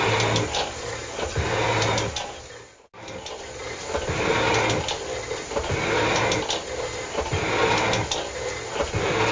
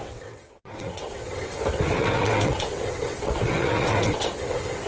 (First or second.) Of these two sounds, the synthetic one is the second